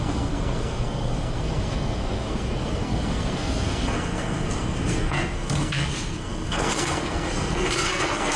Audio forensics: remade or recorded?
remade